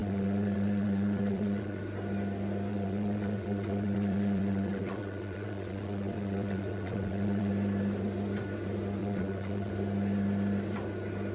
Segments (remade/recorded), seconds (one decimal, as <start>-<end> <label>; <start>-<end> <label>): 0.0-1.8 remade; 1.8-2.7 recorded; 2.7-7.5 remade; 7.5-9.0 recorded; 9.0-9.7 remade; 9.7-11.3 recorded